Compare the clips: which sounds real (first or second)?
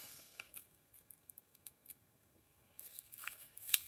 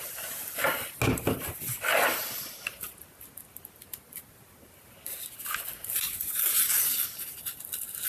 second